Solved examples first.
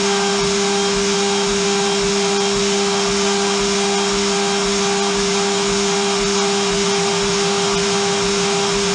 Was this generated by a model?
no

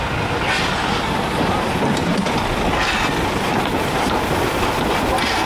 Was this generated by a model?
no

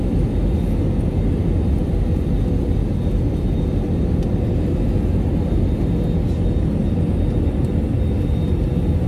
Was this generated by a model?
no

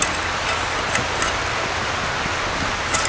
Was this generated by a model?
no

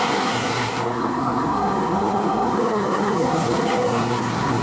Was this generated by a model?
yes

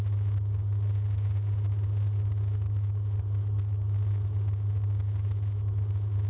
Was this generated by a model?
no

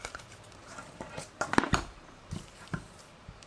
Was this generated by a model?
yes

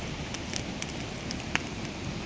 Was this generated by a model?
no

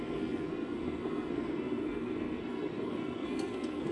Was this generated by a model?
yes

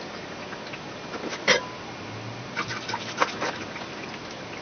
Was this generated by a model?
no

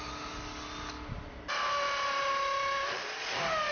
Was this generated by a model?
no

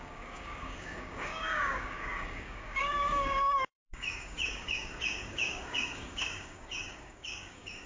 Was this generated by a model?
yes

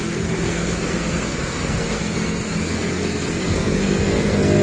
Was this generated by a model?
yes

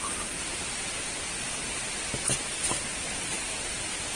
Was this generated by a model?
no